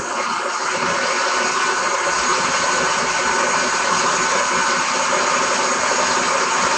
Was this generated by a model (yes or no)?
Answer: no